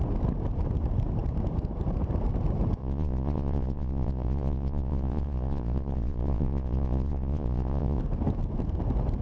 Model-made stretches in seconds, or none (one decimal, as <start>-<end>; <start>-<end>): 2.8-8.0